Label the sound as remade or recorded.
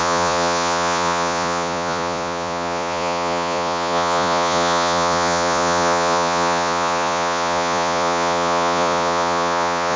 remade